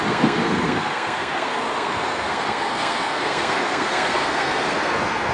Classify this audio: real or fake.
fake